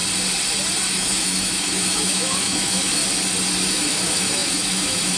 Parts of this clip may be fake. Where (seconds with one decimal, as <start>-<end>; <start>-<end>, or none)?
0.9-3.0; 3.7-5.2